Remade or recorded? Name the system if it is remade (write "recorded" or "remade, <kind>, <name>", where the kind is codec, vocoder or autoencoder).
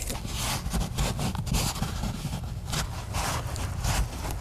recorded